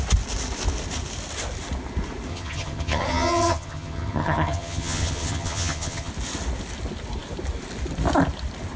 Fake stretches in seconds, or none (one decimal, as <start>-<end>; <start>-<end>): 2.3-6.1

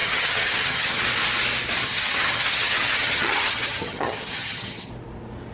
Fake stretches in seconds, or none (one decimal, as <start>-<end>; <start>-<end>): 0.0-1.0; 1.8-4.9